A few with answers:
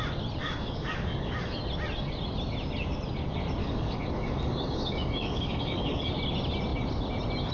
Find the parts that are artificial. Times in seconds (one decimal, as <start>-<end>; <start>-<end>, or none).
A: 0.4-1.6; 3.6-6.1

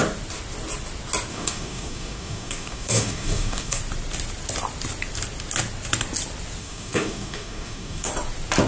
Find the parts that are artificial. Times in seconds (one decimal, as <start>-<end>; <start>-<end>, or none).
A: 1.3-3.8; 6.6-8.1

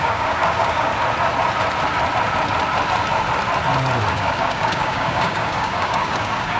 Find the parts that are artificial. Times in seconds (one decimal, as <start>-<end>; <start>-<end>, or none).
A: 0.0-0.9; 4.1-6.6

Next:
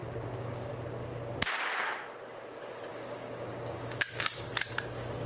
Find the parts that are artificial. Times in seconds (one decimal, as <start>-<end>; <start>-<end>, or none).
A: 0.0-0.7; 2.9-4.5